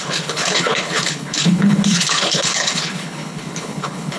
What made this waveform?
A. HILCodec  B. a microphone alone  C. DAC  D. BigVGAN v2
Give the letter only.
A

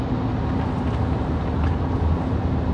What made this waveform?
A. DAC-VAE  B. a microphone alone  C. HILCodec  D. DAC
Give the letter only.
B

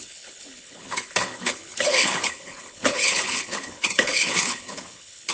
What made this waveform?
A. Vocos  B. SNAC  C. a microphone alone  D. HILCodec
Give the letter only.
D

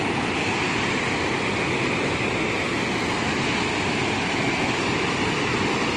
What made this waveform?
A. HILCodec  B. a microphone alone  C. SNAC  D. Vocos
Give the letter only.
B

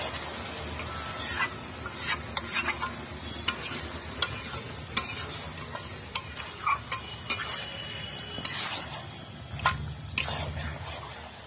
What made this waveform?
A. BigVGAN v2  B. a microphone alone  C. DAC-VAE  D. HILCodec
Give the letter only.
B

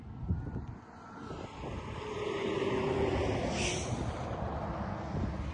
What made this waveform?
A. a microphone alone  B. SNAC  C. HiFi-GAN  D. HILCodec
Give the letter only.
A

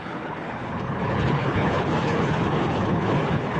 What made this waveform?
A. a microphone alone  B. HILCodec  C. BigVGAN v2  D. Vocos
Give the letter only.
B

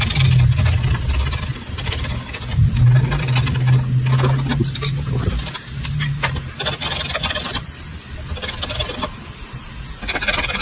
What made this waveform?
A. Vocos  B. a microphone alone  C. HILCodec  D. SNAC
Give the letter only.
B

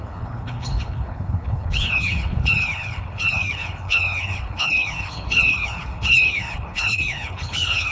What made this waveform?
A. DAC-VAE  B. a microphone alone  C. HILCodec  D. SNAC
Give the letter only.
C